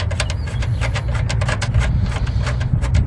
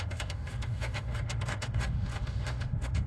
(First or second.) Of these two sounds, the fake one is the second